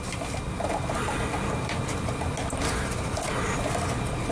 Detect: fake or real real